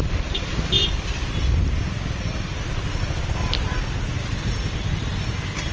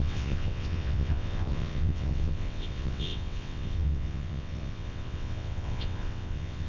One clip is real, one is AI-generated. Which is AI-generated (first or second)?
second